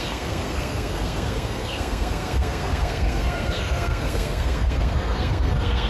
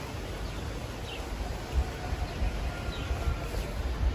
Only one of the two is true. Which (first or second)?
second